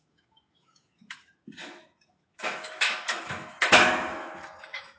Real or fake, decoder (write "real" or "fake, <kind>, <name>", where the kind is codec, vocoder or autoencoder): fake, autoencoder, DAC-VAE